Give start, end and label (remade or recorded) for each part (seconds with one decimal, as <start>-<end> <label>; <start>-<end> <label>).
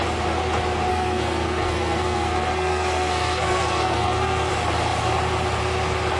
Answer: 0.0-0.9 recorded; 0.9-4.5 remade; 4.5-6.2 recorded